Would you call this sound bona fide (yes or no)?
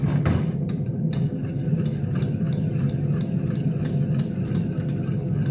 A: yes